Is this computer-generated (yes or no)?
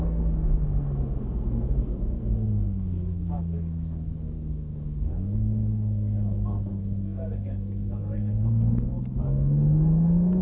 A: yes